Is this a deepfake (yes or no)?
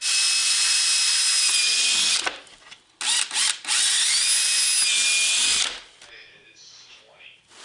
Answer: no